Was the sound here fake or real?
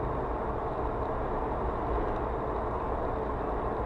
real